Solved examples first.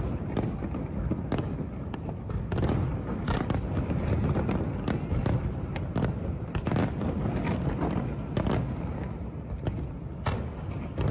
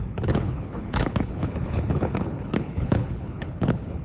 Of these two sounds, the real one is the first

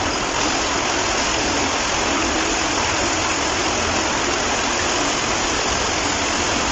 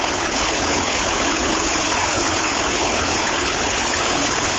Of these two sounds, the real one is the first